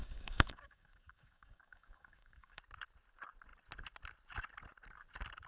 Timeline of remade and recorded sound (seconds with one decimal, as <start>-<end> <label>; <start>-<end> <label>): 0.0-2.6 remade; 2.6-5.5 recorded